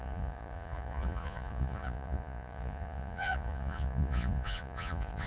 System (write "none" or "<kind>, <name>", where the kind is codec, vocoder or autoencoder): vocoder, Vocos